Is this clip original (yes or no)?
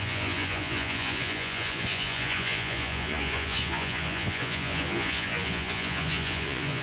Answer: no